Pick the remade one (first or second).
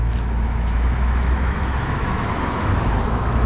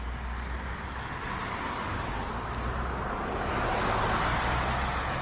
first